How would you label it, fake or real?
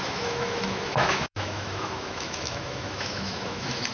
fake